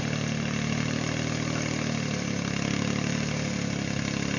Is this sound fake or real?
real